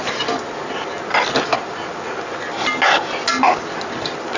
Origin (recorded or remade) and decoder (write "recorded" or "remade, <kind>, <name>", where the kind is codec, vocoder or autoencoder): recorded